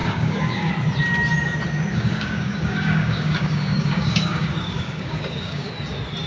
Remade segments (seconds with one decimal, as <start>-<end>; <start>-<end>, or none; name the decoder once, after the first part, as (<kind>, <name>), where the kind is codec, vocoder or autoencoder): 0.0-0.7 (codec, DAC); 1.9-5.7